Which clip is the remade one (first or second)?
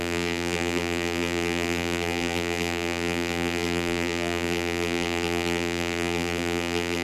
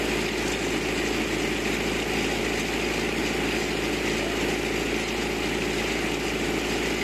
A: first